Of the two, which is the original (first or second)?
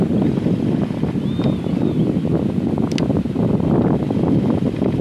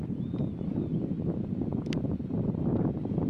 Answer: first